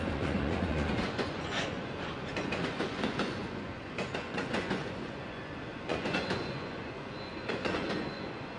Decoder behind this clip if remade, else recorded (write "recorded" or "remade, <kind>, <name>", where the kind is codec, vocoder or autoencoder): remade, vocoder, Vocos